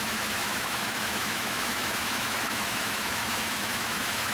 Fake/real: fake